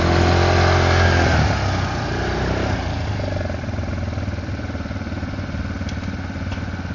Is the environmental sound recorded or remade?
recorded